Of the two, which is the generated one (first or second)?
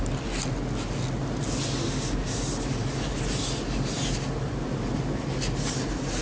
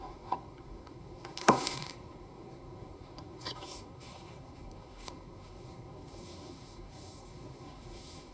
second